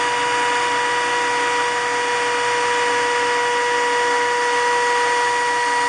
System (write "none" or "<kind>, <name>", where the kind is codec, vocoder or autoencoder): none